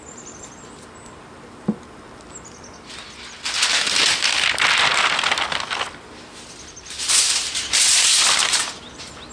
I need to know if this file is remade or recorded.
recorded